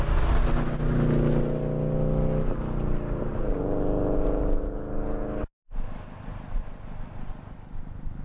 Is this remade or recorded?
recorded